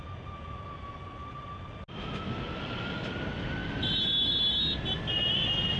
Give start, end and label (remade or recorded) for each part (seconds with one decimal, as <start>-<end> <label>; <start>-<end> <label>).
0.0-5.8 recorded